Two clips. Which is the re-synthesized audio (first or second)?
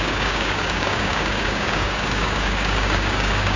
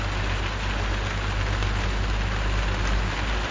first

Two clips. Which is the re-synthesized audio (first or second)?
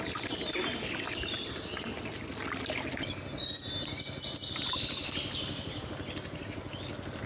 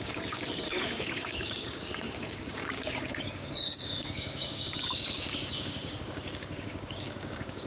second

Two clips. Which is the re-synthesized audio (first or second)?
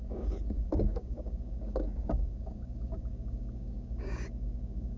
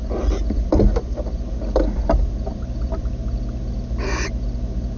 first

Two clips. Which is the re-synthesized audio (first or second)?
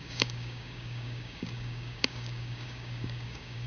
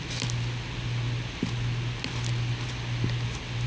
first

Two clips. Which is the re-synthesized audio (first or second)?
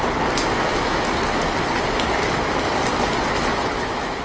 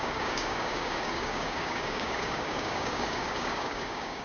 second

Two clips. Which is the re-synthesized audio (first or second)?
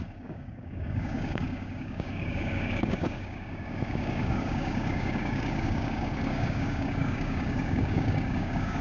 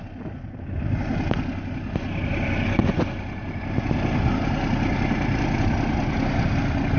first